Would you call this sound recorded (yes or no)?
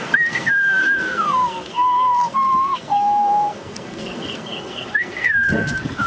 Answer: no